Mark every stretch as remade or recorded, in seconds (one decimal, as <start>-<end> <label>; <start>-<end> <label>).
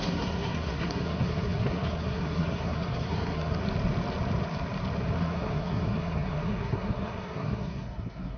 0.0-3.6 remade; 3.6-5.2 recorded; 5.2-8.4 remade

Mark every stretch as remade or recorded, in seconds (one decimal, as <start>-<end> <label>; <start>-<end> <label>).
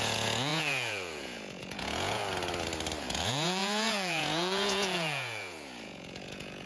0.0-2.2 remade; 2.2-3.0 recorded; 3.0-6.7 remade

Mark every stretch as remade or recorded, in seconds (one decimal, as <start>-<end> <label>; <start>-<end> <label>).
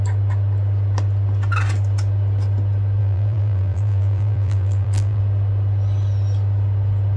0.0-3.0 recorded; 3.0-5.2 remade; 5.2-7.2 recorded